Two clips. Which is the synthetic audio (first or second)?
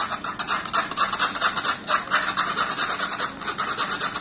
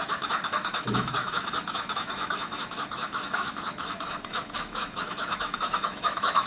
second